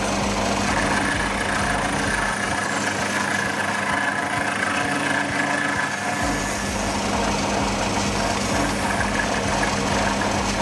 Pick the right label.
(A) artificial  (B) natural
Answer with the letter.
B